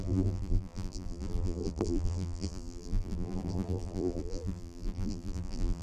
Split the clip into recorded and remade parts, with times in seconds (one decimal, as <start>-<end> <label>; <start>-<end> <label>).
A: 0.0-5.8 remade